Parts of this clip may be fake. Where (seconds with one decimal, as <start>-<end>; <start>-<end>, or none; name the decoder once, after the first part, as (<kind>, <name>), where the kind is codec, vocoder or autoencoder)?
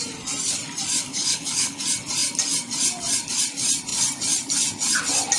1.1-1.8 (codec, HILCodec)